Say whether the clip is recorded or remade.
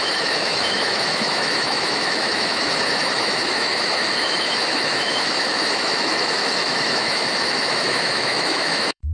remade